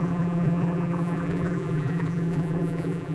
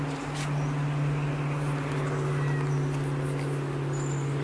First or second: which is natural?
second